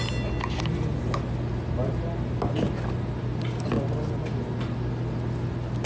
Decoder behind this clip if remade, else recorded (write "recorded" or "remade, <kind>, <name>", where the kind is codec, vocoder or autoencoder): recorded